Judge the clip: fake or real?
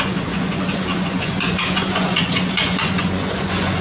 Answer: fake